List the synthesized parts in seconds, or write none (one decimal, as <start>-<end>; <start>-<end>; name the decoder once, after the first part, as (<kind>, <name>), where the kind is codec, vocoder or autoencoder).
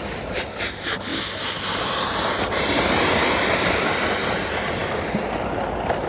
none